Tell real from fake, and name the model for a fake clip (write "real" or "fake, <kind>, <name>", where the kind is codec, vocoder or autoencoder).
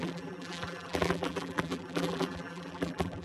fake, vocoder, BigVGAN v2